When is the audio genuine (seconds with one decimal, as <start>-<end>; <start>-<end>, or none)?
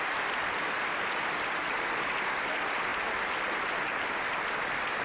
0.0-5.0